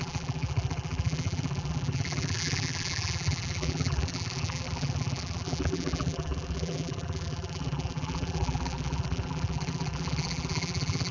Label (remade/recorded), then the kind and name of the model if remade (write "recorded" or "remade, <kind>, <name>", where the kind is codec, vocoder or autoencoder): remade, vocoder, BigVGAN v2